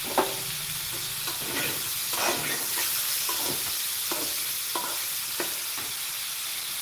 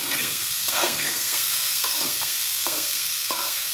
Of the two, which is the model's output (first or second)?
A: second